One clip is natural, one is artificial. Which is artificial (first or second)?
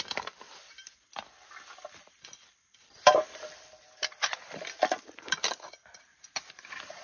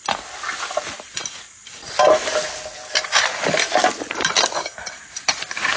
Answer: first